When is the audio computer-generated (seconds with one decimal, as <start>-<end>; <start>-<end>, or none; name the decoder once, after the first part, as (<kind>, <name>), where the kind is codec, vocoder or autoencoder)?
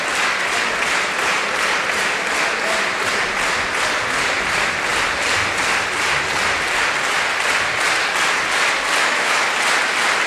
9.0-9.5 (autoencoder, DAC-VAE)